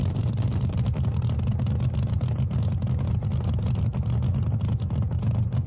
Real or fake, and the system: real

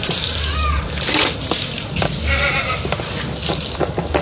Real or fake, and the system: real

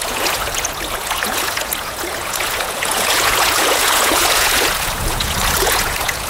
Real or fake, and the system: fake, vocoder, Vocos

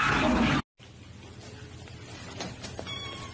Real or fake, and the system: real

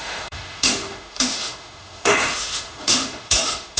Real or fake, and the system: fake, autoencoder, DAC-VAE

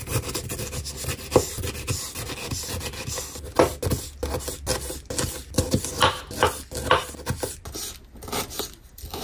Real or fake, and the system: real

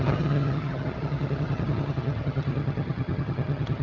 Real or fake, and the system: fake, vocoder, HiFi-GAN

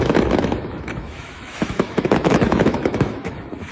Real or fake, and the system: fake, autoencoder, DAC-VAE